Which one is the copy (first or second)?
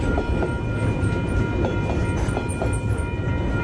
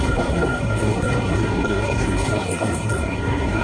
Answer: second